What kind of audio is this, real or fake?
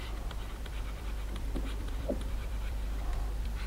fake